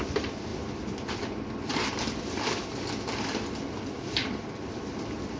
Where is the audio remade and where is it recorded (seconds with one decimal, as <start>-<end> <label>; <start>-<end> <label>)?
0.0-1.7 recorded; 1.7-2.6 remade; 2.6-3.6 recorded; 3.6-5.4 remade